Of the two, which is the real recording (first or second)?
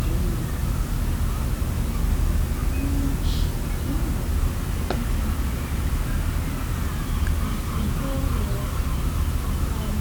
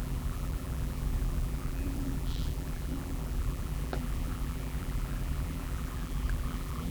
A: first